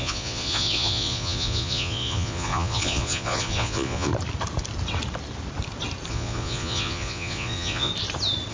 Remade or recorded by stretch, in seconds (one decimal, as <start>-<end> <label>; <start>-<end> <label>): 0.0-4.1 remade; 4.1-6.1 recorded; 6.1-7.9 remade; 7.9-8.5 recorded